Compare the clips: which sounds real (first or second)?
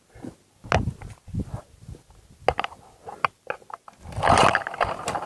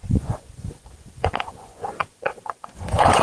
first